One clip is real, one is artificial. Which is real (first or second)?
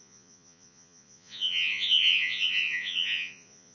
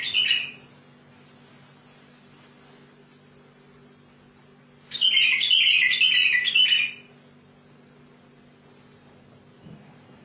second